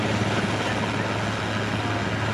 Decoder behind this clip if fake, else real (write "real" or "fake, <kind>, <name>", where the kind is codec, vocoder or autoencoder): real